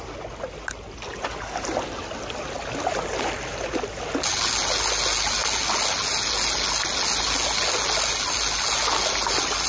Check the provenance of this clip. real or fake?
real